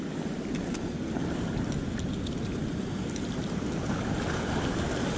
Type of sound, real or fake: real